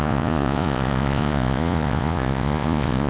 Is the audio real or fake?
fake